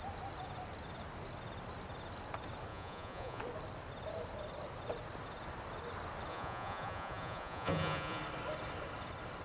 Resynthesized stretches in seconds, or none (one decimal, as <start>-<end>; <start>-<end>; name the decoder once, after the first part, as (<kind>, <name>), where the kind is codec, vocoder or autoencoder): 2.7-3.4 (vocoder, Vocos); 6.3-8.2